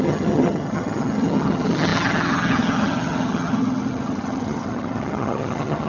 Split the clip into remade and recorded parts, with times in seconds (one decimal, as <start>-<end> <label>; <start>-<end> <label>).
0.0-5.9 remade